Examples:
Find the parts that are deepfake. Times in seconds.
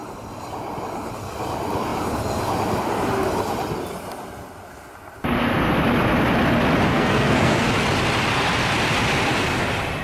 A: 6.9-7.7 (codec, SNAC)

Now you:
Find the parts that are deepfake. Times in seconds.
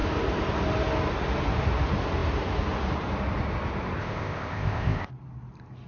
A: 4.0-5.1 (codec, ZipCodec)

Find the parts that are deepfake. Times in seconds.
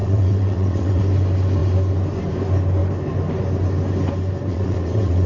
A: 0.0-1.0 (vocoder, WaveNeXt); 4.5-5.3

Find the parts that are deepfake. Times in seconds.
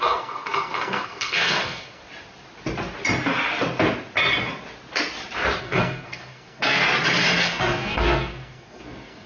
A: 0.0-2.0 (codec, SNAC); 5.6-6.8; 7.4-9.3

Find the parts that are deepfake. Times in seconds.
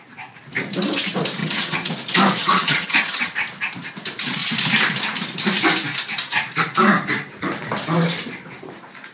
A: 1.4-1.9 (vocoder, HiFi-GAN); 2.4-3.3